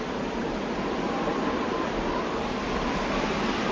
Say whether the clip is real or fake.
real